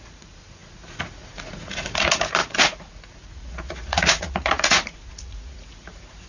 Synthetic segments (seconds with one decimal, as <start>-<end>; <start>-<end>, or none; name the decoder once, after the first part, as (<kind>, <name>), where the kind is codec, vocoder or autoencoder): 0.0-6.3 (vocoder, Vocos)